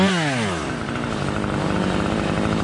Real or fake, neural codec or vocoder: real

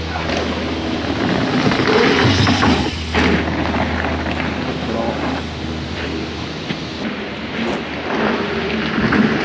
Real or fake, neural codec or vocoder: real